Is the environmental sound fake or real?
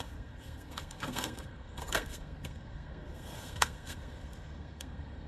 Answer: fake